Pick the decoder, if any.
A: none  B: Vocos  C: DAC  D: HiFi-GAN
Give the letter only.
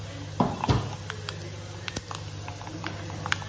A